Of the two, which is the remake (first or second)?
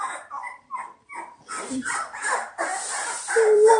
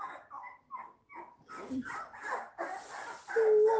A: first